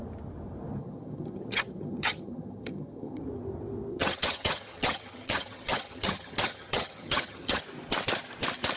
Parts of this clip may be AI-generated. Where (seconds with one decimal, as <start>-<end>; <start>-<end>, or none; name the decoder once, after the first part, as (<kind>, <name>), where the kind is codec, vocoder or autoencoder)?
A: 0.8-3.2 (vocoder, HiFi-GAN); 3.9-7.6